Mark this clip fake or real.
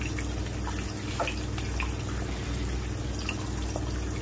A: real